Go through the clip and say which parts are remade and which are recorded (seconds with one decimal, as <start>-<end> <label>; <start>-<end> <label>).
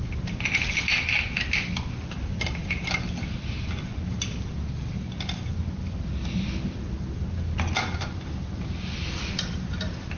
0.0-10.2 recorded